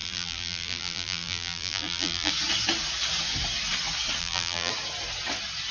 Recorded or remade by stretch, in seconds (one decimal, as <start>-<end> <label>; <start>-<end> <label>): 0.0-2.3 remade; 2.3-4.2 recorded; 4.2-4.7 remade; 4.7-5.7 recorded